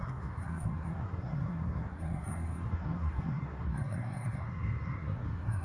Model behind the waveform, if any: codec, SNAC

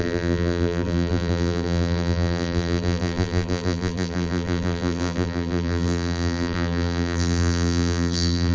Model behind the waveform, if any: vocoder, BigVGAN v2